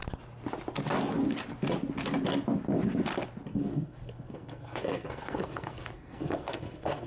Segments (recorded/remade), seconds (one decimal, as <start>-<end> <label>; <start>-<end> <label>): 0.0-3.5 recorded; 3.5-7.1 remade